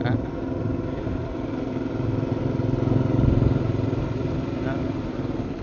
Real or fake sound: real